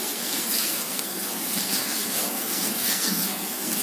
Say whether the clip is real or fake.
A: fake